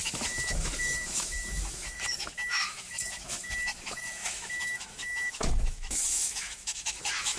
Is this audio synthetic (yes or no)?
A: yes